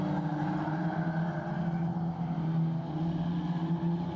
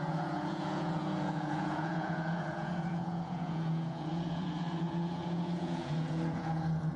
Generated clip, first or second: second